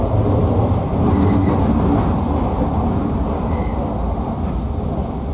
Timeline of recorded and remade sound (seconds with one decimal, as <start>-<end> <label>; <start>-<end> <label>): 0.0-3.7 recorded; 3.7-4.4 remade; 4.4-5.3 recorded